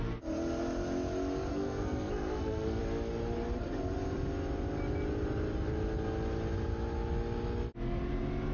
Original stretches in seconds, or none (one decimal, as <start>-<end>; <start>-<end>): 0.0-1.5; 2.8-8.5